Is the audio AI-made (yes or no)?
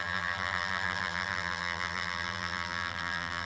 yes